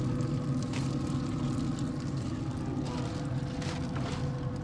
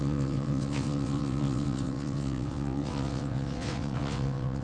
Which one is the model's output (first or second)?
second